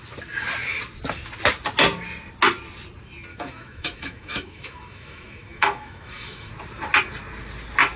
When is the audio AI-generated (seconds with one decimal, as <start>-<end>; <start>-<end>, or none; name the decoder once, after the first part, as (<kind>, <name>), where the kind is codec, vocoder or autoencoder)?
3.3-6.5 (autoencoder, DAC-VAE)